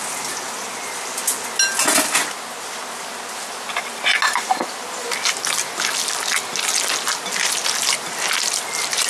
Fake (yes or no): no